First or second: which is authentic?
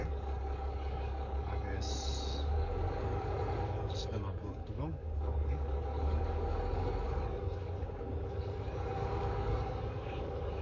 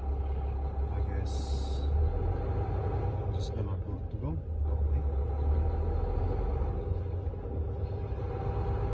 second